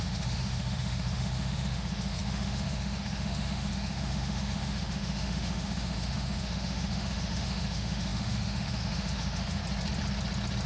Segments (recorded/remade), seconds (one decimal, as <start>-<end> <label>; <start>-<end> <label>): 0.0-9.6 remade; 9.6-10.7 recorded